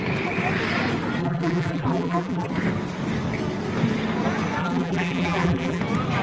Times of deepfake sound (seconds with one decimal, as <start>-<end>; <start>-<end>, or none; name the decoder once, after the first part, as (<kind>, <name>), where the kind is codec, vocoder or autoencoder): 1.2-2.5 (vocoder, BigVGAN v2); 4.6-5.8